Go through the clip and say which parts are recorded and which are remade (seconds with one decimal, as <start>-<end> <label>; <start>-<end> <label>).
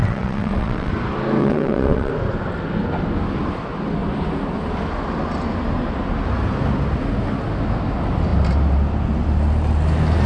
0.0-0.9 remade; 0.9-1.4 recorded; 1.4-2.1 remade; 2.1-10.3 recorded